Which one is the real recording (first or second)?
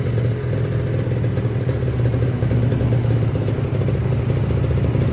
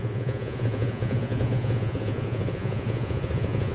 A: first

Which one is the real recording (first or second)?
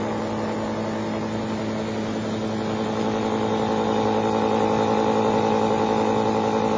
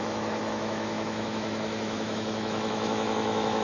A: first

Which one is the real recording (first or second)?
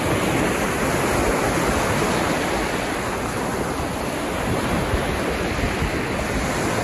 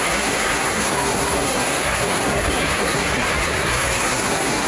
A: first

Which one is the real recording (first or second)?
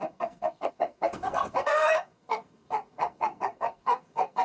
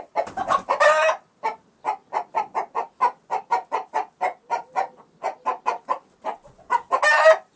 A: second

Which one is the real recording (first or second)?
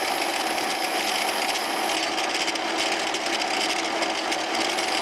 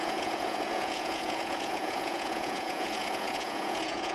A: first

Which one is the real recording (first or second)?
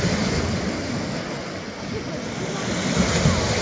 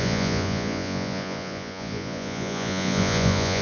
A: first